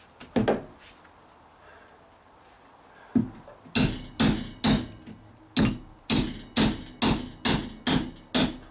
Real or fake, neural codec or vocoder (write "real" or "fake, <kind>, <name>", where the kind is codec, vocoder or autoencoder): real